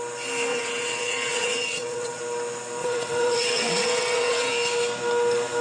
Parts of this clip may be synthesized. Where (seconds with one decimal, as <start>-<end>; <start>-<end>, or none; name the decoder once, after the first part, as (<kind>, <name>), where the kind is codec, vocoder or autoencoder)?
0.5-2.2 (vocoder, WaveNeXt); 2.8-4.5